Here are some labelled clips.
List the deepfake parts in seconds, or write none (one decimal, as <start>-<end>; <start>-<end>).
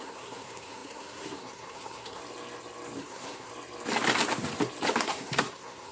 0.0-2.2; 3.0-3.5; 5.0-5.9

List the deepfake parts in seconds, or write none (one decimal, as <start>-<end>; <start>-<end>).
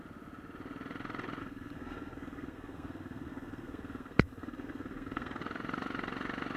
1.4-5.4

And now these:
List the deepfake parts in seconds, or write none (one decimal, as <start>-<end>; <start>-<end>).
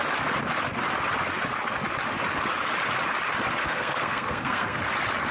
3.6-4.8